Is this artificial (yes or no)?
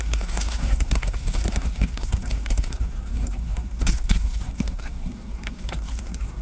yes